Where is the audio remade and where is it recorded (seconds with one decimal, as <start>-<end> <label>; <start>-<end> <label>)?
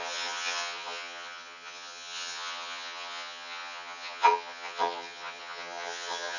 0.0-6.4 remade